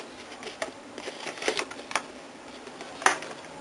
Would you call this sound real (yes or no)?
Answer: yes